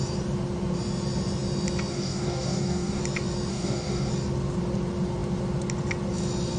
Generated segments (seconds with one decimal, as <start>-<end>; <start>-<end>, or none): 1.9-3.0; 3.5-4.1